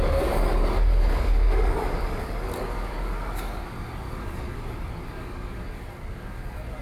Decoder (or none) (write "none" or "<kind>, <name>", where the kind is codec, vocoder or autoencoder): codec, DAC